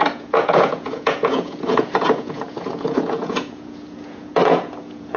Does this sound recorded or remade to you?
remade